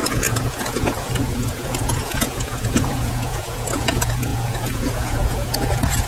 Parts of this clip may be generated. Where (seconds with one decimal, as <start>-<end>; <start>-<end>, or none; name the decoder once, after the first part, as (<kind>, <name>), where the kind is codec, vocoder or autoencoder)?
0.0-6.1 (vocoder, Vocos)